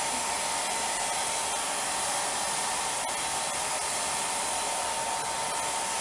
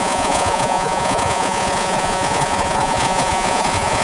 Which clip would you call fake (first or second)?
second